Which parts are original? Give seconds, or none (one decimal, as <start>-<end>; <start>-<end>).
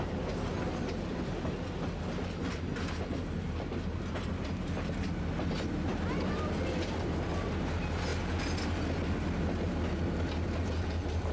0.0-11.3